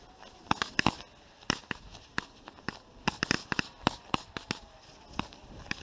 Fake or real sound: real